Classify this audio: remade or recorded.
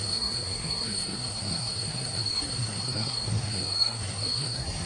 remade